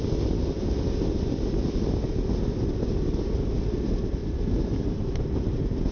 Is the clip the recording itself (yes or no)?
yes